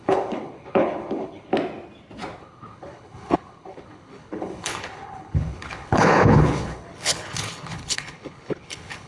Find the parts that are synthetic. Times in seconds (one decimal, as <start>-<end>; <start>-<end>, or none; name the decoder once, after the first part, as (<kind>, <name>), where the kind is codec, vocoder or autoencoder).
0.0-1.5 (codec, HILCodec); 2.4-9.1